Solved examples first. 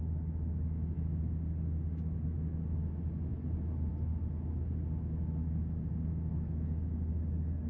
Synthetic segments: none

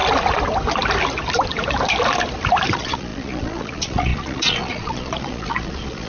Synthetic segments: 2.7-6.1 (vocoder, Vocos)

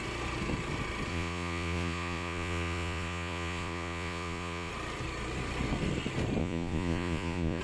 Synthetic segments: 1.1-4.7 (vocoder, Vocos); 6.4-7.6

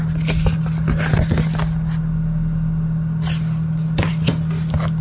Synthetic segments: none

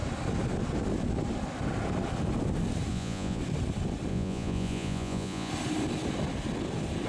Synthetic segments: 2.9-3.4 (vocoder, Vocos); 4.1-5.5

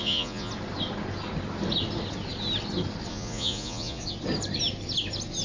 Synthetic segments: 0.0-0.5 (vocoder, Vocos); 3.1-4.0